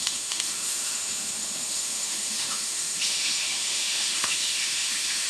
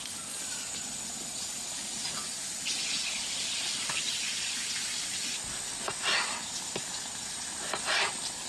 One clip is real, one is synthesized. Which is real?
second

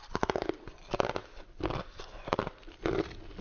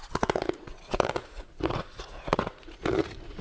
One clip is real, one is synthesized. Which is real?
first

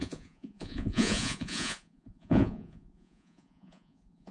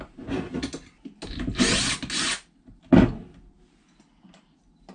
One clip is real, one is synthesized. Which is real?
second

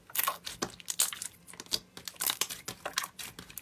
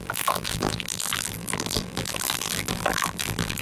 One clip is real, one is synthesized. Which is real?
first